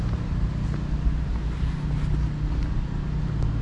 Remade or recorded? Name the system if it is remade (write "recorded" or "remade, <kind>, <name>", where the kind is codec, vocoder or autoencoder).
recorded